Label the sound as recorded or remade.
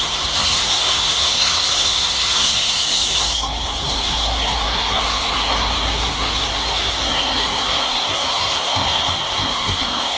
remade